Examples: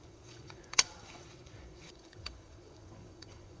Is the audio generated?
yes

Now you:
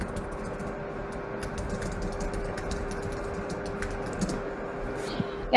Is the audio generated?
no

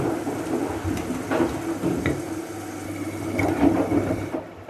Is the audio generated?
no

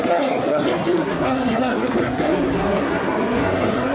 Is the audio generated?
yes